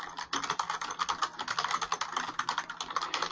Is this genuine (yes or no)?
yes